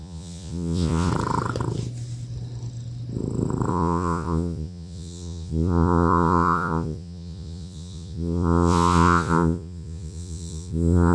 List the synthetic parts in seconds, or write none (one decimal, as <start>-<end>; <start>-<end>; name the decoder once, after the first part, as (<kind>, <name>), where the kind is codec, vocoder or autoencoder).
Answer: 0.0-1.1 (vocoder, Vocos); 3.7-11.1